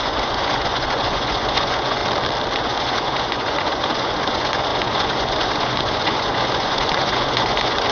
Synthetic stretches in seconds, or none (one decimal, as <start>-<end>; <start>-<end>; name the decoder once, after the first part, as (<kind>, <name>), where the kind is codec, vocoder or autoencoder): 0.0-2.0 (vocoder, Vocos); 2.6-7.9